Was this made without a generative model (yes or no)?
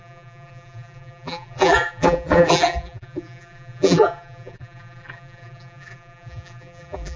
no